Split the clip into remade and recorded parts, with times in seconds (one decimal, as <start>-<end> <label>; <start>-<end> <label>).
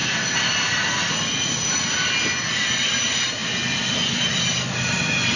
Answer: 0.0-5.4 recorded